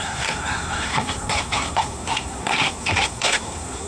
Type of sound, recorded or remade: remade